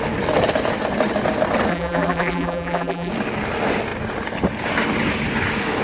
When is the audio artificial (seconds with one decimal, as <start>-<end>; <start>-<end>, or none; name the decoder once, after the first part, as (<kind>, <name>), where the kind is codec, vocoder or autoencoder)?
1.7-3.1 (vocoder, BigVGAN v2)